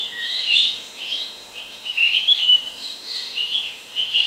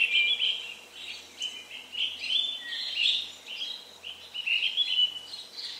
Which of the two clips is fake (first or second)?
first